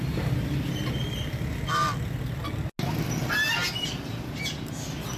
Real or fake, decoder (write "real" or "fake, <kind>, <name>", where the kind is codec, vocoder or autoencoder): real